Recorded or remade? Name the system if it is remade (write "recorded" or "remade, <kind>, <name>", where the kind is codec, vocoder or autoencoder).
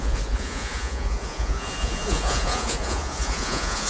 remade, vocoder, Vocos